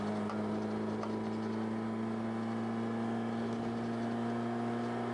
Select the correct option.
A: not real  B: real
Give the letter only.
B